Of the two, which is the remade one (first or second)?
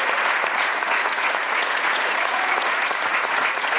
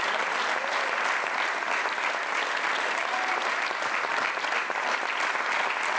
first